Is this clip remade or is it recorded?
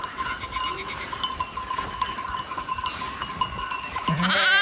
recorded